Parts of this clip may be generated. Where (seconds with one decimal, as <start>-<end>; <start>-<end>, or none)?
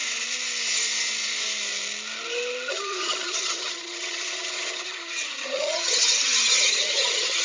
2.7-7.4